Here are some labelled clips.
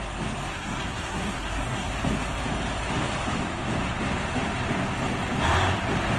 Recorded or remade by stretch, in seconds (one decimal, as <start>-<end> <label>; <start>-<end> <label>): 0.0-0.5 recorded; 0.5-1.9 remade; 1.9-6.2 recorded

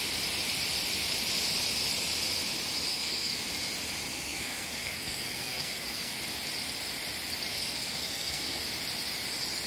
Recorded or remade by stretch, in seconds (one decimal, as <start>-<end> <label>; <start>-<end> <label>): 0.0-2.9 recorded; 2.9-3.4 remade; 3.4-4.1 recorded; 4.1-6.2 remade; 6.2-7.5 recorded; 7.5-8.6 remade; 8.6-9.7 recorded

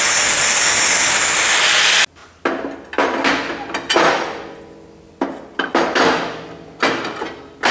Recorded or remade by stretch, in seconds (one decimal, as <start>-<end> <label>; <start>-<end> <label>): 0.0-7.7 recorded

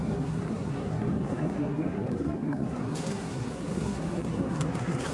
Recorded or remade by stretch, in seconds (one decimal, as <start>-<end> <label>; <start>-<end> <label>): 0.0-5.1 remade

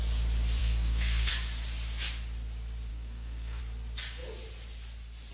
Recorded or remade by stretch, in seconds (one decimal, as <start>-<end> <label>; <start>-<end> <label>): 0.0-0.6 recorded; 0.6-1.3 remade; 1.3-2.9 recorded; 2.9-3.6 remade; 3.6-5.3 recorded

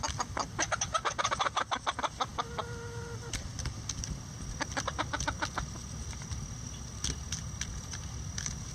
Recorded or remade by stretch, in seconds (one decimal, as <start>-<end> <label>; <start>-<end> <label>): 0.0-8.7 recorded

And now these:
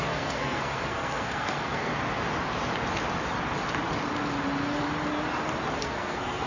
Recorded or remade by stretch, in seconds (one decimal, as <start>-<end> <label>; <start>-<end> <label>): 0.0-1.9 remade; 1.9-5.8 recorded; 5.8-6.5 remade